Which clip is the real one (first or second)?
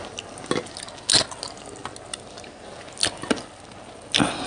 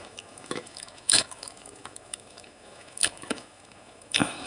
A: first